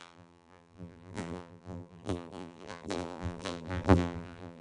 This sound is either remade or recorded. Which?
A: remade